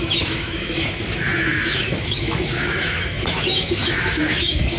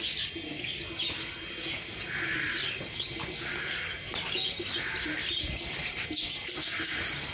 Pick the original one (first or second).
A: second